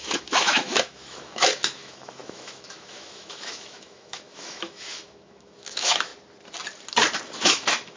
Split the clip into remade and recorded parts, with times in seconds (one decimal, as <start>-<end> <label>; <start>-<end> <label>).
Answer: 0.0-6.1 remade; 6.1-7.4 recorded; 7.4-8.0 remade